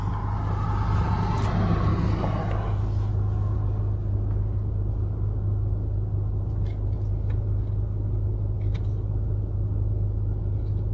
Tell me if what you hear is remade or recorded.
recorded